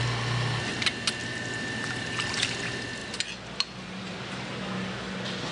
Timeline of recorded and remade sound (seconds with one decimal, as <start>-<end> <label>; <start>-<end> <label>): 0.0-5.5 recorded